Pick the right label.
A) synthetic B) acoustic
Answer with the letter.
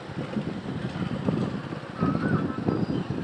B